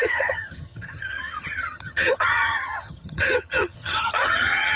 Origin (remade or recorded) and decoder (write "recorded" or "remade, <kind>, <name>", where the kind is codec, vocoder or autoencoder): remade, vocoder, HiFi-GAN